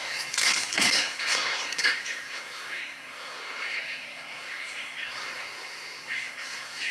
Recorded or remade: remade